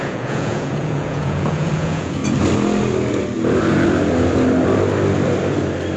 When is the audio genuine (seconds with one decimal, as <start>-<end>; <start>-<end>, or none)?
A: 2.2-6.0